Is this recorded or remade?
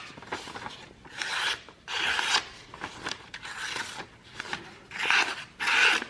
recorded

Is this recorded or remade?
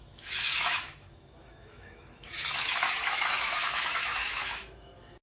remade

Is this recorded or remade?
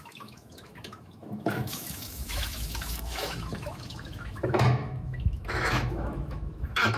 remade